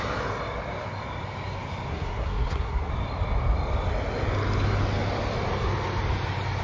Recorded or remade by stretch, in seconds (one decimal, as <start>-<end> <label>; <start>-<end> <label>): 0.0-1.9 recorded; 1.9-2.9 remade; 2.9-6.6 recorded